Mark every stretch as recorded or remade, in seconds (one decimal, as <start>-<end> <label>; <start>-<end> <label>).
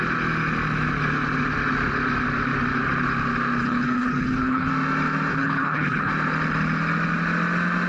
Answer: 0.0-3.6 recorded; 3.6-4.7 remade; 4.7-5.3 recorded; 5.3-6.1 remade; 6.1-7.9 recorded